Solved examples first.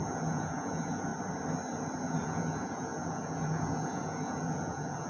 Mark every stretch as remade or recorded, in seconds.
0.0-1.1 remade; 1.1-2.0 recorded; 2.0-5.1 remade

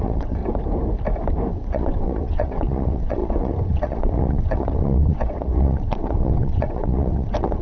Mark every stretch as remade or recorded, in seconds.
0.0-0.4 remade; 0.4-1.5 recorded; 1.5-7.6 remade

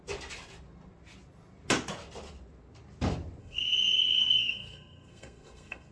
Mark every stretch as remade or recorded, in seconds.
0.0-3.4 recorded; 3.4-5.9 remade

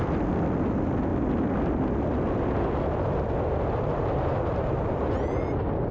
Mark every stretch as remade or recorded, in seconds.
0.0-3.9 recorded; 3.9-5.4 remade; 5.4-5.9 recorded